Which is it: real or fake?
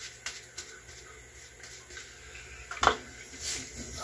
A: real